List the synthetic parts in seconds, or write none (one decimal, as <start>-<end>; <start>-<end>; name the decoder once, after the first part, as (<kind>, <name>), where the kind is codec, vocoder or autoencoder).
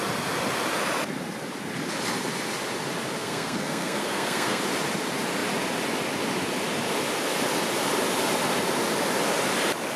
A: 3.2-4.6 (codec, SNAC)